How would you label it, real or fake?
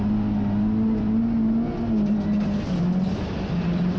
real